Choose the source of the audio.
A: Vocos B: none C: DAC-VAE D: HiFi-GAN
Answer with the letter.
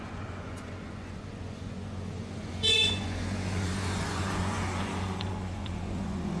A